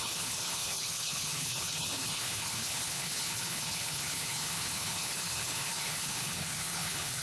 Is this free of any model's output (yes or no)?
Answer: no